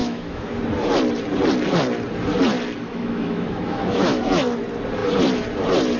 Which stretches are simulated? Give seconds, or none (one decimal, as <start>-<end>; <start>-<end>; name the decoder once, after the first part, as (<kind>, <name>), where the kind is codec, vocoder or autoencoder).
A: 0.0-0.6 (autoencoder, DAC-VAE); 2.8-4.2